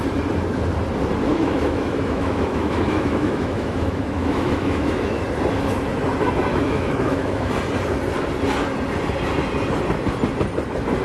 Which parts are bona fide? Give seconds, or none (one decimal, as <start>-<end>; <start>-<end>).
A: 0.0-1.3; 5.2-6.5; 7.5-11.0